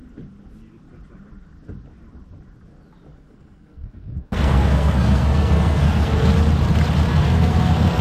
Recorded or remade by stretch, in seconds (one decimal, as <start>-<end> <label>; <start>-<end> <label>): 0.0-3.1 recorded; 3.1-6.3 remade; 6.3-7.1 recorded; 7.1-8.0 remade